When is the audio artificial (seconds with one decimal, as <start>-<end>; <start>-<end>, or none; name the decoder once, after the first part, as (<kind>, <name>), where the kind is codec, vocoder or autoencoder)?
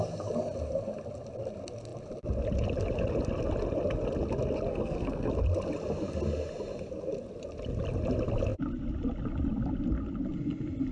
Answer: 4.7-5.3 (codec, SNAC)